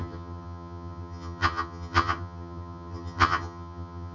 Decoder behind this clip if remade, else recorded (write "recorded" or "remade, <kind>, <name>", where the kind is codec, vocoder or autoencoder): remade, vocoder, HiFi-GAN